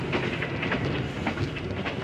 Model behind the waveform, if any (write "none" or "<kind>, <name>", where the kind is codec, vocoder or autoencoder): none